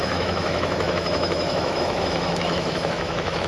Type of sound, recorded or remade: remade